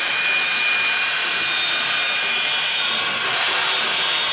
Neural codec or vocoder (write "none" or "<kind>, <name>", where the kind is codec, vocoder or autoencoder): none